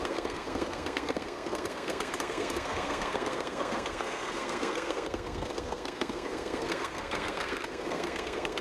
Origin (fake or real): fake